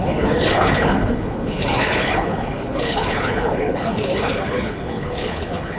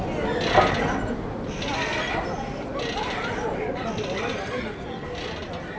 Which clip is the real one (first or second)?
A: second